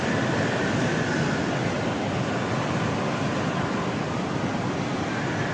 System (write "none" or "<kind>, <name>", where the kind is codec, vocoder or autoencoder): none